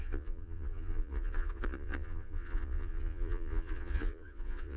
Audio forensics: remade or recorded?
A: remade